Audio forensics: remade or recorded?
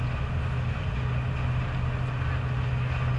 recorded